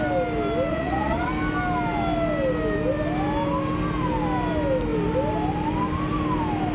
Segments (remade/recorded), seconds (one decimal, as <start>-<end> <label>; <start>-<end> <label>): 0.0-0.7 recorded; 0.7-1.3 remade; 1.3-6.7 recorded